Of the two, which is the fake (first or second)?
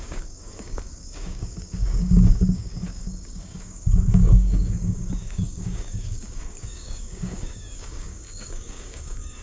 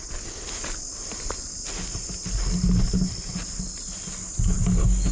first